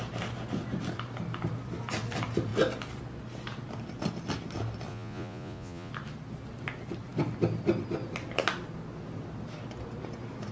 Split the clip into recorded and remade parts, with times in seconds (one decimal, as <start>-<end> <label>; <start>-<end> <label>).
0.0-4.9 recorded; 4.9-5.9 remade; 5.9-10.5 recorded